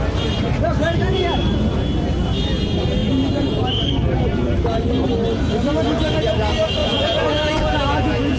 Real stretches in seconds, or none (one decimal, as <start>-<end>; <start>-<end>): 0.0-6.8